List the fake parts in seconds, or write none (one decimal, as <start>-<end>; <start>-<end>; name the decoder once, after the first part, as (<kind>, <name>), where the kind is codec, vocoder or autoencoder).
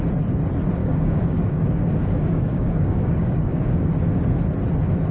0.8-3.9 (codec, DAC)